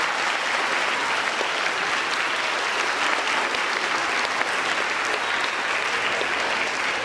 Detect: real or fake real